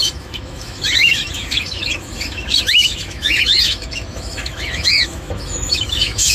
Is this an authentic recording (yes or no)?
no